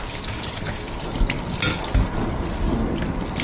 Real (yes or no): yes